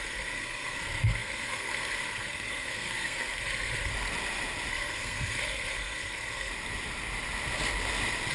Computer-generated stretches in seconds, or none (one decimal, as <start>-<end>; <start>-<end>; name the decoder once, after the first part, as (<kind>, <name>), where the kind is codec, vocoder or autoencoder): 0.0-3.9 (codec, SNAC); 4.7-6.5